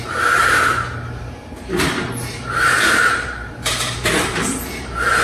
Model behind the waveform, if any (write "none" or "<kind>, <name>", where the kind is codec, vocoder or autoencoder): vocoder, BigVGAN v2